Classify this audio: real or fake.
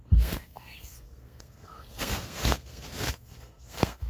fake